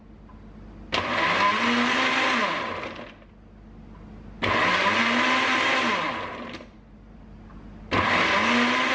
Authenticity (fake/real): real